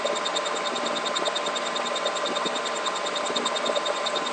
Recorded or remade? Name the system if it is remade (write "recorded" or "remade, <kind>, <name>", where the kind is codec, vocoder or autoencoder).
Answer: recorded